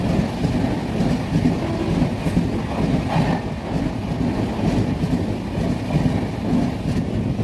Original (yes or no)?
yes